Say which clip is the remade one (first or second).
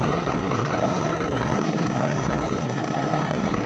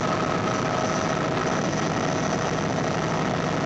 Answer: first